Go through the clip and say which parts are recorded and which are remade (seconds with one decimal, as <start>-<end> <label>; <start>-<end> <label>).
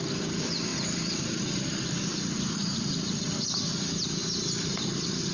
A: 0.0-0.7 remade; 0.7-3.2 recorded; 3.2-5.3 remade